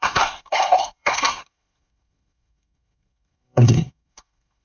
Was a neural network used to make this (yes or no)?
yes